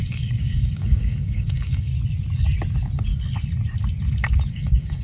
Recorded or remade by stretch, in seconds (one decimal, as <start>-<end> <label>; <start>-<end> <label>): 0.0-1.9 remade; 1.9-4.5 recorded; 4.5-5.0 remade